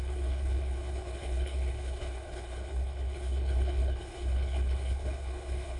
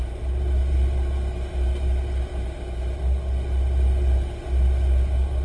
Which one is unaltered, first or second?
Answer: second